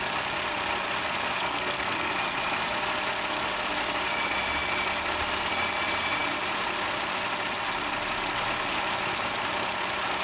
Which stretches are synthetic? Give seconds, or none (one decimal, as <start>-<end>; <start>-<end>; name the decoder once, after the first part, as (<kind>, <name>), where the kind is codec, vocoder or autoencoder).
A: 1.4-2.1 (codec, SNAC)